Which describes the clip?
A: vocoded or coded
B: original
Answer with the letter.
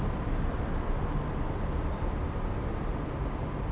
B